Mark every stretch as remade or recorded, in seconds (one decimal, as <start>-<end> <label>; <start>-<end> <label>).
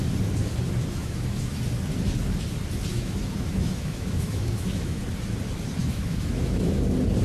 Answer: 0.0-1.0 recorded; 1.0-1.6 remade; 1.6-2.9 recorded; 2.9-5.0 remade; 5.0-5.8 recorded; 5.8-6.8 remade; 6.8-7.2 recorded